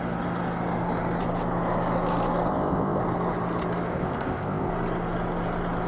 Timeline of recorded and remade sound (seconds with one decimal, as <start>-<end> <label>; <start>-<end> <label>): 0.0-2.5 recorded; 2.5-3.0 remade; 3.0-3.9 recorded; 3.9-4.7 remade; 4.7-5.9 recorded